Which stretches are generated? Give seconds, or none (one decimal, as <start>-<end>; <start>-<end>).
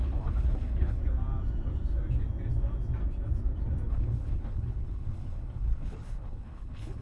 0.0-1.0; 3.9-7.0